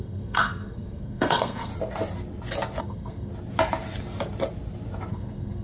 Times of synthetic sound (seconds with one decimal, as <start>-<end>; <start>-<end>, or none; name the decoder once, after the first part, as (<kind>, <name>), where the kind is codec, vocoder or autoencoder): 0.0-1.7 (codec, SNAC); 2.8-3.3; 5.1-5.6

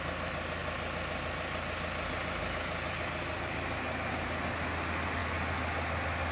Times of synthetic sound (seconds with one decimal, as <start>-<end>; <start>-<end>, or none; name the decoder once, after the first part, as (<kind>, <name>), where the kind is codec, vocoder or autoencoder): none

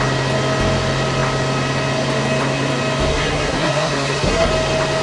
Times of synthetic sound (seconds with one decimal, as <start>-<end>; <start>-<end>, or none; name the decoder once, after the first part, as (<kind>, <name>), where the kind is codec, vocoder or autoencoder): 3.1-4.5 (codec, SNAC)

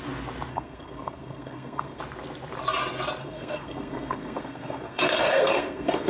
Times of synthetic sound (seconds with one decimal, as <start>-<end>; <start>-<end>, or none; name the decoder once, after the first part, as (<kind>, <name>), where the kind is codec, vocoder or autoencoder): 0.5-2.0 (codec, SNAC); 3.2-6.1